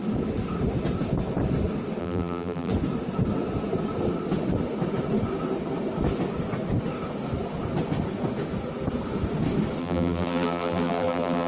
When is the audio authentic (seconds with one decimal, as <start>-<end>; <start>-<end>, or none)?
0.0-2.0; 2.7-9.8

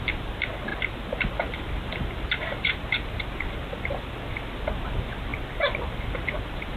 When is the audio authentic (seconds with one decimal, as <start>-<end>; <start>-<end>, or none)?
0.0-0.7; 1.3-6.8

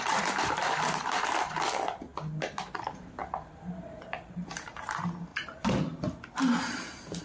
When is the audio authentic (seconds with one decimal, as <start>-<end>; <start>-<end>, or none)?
2.1-2.7; 3.2-3.8; 5.3-7.2

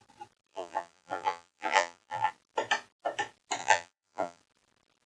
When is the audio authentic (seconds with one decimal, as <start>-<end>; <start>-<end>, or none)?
0.0-0.5; 2.3-3.6; 4.4-5.1

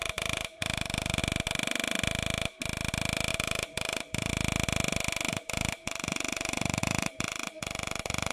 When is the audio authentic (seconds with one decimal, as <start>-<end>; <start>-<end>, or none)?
1.2-3.3; 4.3-5.3